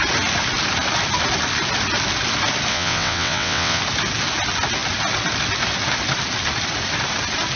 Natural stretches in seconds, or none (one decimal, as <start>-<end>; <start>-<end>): 0.0-2.7; 3.8-7.6